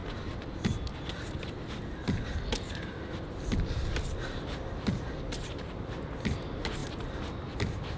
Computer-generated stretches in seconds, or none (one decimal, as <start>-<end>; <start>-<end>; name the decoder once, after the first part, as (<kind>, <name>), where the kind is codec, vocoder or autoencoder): none